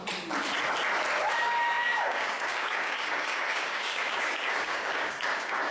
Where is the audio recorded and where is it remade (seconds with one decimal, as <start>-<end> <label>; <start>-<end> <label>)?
0.0-1.3 recorded; 1.3-5.7 remade